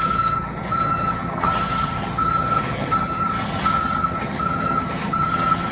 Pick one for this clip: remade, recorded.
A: remade